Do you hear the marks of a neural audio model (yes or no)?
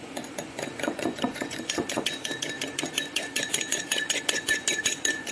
yes